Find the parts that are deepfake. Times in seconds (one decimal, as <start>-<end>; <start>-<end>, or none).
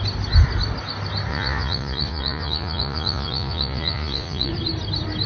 1.3-4.5